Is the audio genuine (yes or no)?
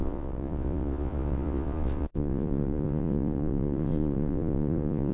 no